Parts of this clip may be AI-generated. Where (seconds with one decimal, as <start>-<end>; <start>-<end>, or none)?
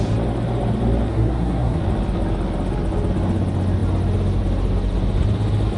1.1-1.8